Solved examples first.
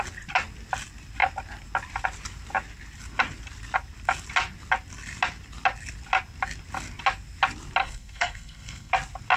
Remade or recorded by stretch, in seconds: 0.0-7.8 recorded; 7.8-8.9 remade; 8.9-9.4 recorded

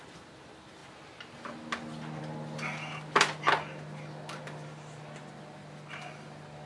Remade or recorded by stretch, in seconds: 0.0-6.7 recorded

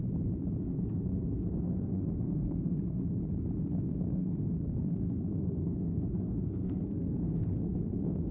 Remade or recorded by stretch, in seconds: 0.0-0.6 recorded; 0.6-3.2 remade; 3.2-3.9 recorded; 3.9-8.3 remade

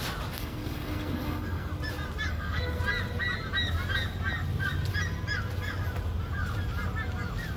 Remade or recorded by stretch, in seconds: 0.0-0.4 recorded; 0.4-1.7 remade; 1.7-2.3 recorded; 2.3-2.8 remade; 2.8-7.6 recorded

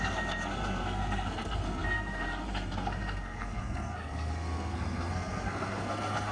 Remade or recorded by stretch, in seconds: 0.0-6.3 remade

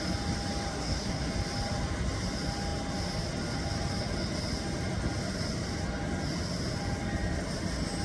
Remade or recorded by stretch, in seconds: 0.0-0.7 recorded; 0.7-1.3 remade; 1.3-8.0 recorded

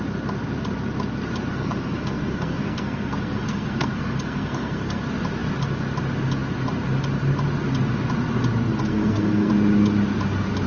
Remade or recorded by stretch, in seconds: 0.0-1.5 recorded; 1.5-5.0 remade; 5.0-8.8 recorded; 8.8-9.5 remade; 9.5-10.7 recorded

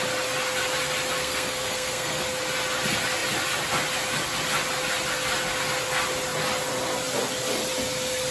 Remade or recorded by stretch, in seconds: 0.0-1.2 recorded; 1.2-2.2 remade; 2.2-8.3 recorded